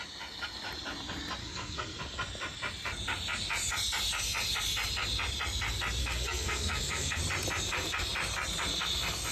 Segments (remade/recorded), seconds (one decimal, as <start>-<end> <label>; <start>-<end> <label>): 0.0-1.4 recorded; 1.4-2.0 remade; 2.0-6.0 recorded; 6.0-7.2 remade; 7.2-9.3 recorded